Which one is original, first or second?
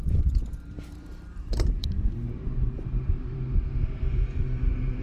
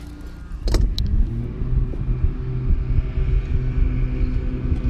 second